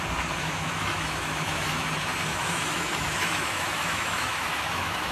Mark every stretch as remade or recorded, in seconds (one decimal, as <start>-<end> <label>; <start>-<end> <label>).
0.0-0.4 recorded; 0.4-1.9 remade; 1.9-2.3 recorded; 2.3-5.1 remade